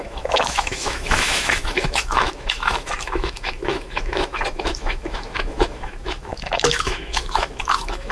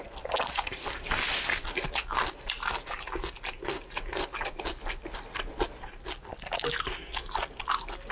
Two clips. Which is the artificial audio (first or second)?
first